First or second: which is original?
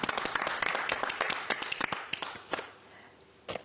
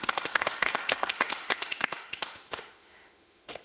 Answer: first